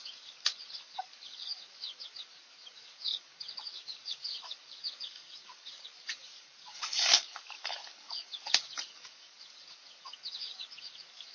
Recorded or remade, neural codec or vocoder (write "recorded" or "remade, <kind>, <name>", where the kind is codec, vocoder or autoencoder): remade, codec, DAC